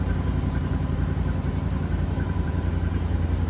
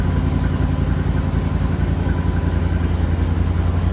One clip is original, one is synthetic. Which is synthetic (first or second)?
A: first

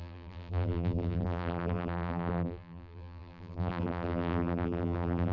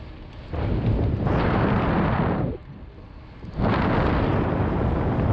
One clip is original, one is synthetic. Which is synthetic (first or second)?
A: first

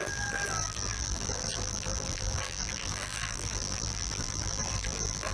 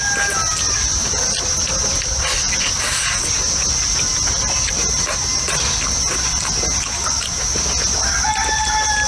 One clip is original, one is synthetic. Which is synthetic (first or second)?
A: first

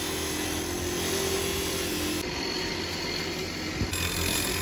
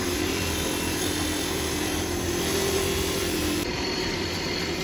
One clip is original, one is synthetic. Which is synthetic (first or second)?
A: second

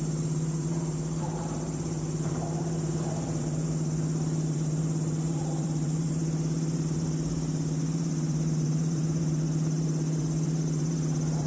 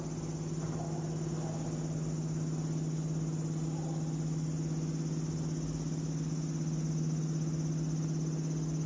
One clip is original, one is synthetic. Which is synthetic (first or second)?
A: first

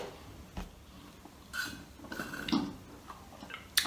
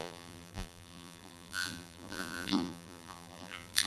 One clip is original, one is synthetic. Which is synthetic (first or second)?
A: second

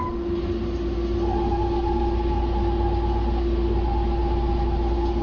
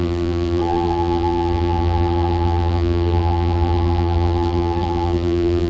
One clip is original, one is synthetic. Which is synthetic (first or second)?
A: second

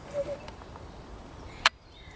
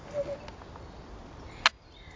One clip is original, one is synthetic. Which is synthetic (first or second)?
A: first